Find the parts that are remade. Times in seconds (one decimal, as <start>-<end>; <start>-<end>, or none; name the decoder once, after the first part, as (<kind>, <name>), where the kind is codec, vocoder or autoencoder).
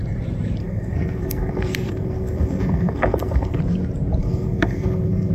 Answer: 0.6-3.6 (codec, SNAC); 4.2-5.3